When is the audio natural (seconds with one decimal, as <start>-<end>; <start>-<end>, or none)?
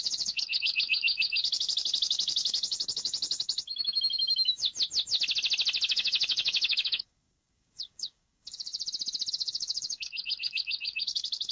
4.7-5.9; 8.7-9.3